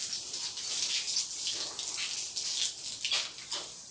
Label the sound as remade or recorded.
recorded